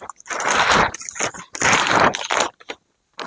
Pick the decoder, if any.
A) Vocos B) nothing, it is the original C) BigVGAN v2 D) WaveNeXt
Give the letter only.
B